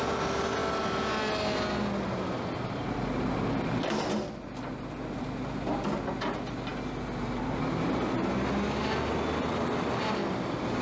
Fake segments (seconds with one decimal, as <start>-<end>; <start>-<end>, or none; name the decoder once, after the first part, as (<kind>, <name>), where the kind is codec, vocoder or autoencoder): none